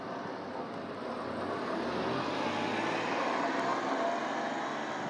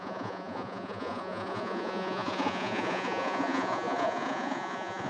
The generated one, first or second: second